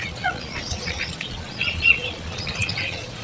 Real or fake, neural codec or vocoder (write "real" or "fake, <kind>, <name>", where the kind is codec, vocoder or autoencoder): fake, vocoder, Vocos